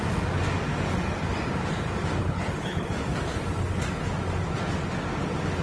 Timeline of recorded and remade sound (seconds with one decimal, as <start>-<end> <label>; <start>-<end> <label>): 0.0-2.2 recorded; 2.2-2.9 remade; 2.9-5.6 recorded